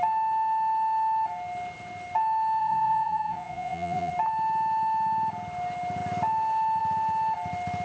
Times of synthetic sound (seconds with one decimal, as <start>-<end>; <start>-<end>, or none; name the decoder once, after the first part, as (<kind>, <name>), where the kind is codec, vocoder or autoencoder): 2.6-4.1 (vocoder, Vocos)